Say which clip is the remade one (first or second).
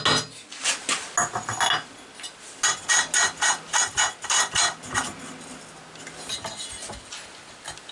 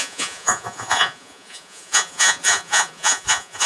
second